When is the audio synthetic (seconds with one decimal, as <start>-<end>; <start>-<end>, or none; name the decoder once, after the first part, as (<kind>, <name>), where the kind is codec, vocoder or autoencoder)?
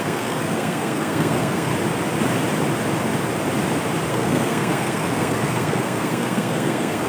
0.0-1.7 (codec, SNAC); 4.1-7.1